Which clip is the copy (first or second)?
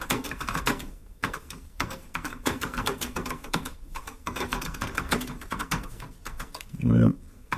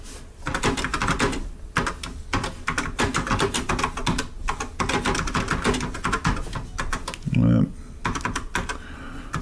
first